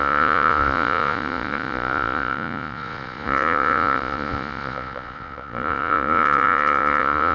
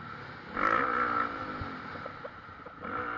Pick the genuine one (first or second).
second